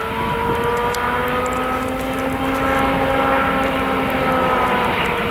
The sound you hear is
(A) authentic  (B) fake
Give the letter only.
A